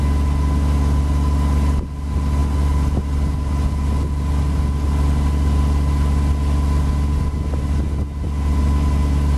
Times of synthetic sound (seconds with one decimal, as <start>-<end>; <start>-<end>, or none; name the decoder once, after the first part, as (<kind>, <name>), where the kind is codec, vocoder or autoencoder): none